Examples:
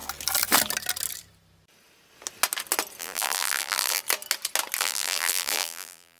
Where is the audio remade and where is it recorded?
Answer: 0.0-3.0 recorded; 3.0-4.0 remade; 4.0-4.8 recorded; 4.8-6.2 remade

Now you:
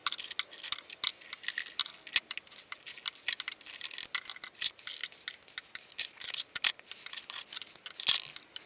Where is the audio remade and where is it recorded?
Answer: 0.0-8.7 recorded